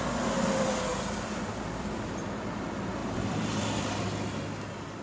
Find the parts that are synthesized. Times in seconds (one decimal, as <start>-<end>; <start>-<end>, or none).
0.9-2.5; 3.0-3.9